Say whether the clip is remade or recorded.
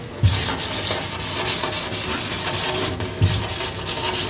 recorded